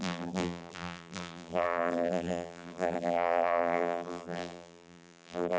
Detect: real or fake fake